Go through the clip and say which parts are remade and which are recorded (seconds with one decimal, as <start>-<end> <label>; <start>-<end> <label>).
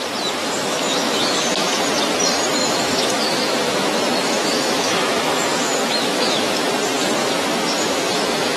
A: 0.0-0.4 recorded; 0.4-1.8 remade; 1.8-2.6 recorded; 2.6-6.7 remade; 6.7-7.2 recorded; 7.2-8.6 remade